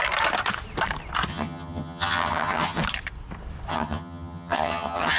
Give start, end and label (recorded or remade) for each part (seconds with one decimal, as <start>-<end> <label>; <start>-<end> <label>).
0.0-1.3 recorded; 1.3-2.8 remade; 2.8-3.7 recorded; 3.7-5.2 remade